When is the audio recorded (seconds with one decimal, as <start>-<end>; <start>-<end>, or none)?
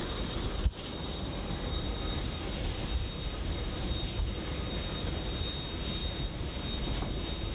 2.8-7.5